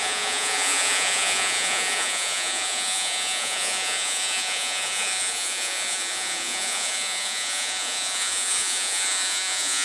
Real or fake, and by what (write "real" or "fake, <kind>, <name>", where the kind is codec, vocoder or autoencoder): fake, vocoder, Vocos